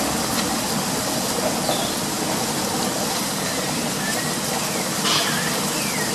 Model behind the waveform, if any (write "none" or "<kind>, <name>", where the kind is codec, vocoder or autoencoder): none